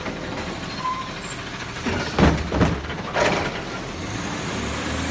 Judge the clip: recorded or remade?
recorded